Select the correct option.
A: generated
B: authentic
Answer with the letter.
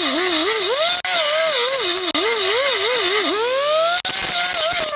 B